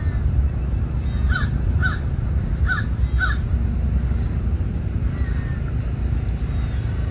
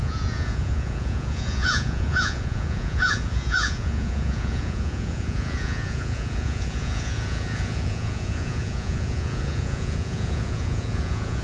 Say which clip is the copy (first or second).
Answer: second